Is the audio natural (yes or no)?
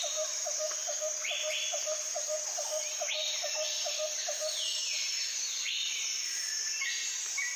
yes